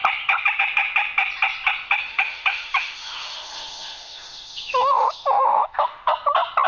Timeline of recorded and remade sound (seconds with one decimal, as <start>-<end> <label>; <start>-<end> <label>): 0.0-2.1 recorded; 2.1-6.1 remade; 6.1-6.7 recorded